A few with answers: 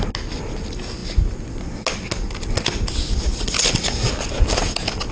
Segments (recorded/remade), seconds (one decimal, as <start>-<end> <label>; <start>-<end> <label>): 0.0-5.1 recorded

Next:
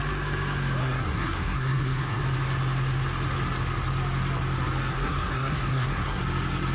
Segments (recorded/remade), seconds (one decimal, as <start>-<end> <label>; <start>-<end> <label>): 0.0-0.8 recorded; 0.8-2.2 remade; 2.2-4.9 recorded; 4.9-6.2 remade; 6.2-6.7 recorded

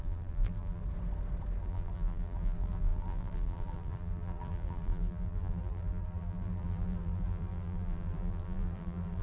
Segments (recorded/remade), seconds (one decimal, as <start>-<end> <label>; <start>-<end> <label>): 0.0-0.8 remade; 0.8-1.6 recorded; 1.6-9.2 remade

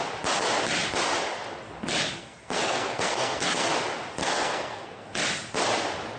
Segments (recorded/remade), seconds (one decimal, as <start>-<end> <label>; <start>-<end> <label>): 0.0-2.2 recorded; 2.2-3.7 remade; 3.7-4.2 recorded; 4.2-5.1 remade; 5.1-6.2 recorded

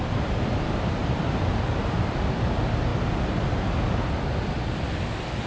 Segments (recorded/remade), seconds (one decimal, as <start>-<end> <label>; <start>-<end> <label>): 0.0-5.5 recorded